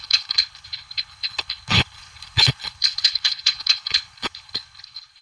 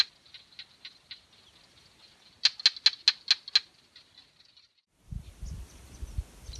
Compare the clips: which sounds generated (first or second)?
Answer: first